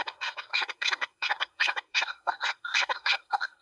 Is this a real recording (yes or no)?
no